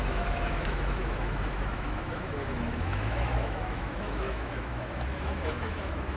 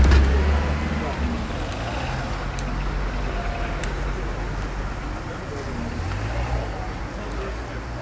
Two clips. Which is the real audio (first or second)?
second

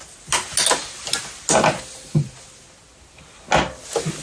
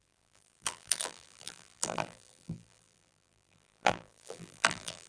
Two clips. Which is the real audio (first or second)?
first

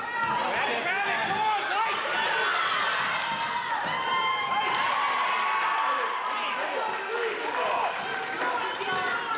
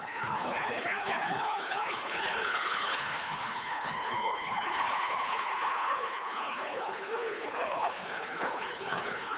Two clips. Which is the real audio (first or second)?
first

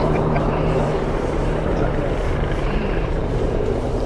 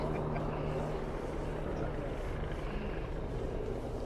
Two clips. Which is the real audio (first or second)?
second